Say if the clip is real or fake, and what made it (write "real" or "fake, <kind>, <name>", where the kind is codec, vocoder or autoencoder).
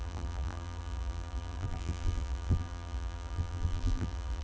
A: fake, vocoder, BigVGAN v2